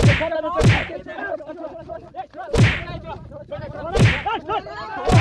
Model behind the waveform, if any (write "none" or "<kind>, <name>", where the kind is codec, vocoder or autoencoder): none